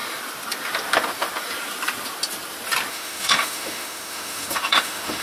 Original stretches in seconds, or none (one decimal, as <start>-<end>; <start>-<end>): 0.0-2.9